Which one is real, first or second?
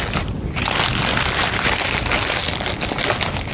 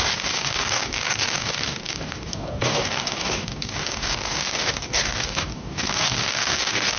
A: first